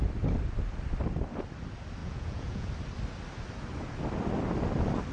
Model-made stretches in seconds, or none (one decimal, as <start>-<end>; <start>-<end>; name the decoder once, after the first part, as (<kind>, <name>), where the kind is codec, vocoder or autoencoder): 2.0-2.7 (vocoder, Vocos)